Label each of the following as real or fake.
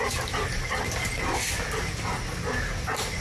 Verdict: real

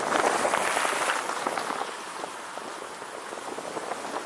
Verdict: real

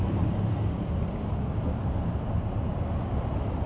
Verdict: fake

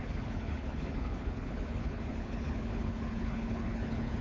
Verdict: fake